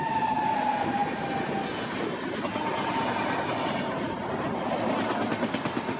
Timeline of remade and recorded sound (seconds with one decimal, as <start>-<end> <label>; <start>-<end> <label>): 0.0-6.0 recorded

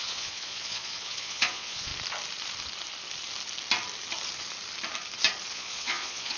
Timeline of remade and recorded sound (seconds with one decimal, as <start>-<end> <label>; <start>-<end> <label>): 0.0-1.9 remade; 1.9-5.5 recorded; 5.5-6.4 remade